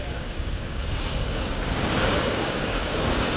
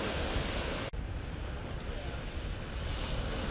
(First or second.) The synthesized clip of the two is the first